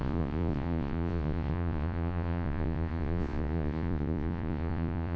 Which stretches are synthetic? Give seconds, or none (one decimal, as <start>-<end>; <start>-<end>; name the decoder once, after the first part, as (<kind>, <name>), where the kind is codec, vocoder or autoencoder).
0.0-5.2 (vocoder, Vocos)